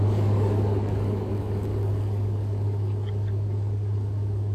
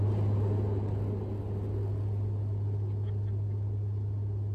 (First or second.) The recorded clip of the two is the second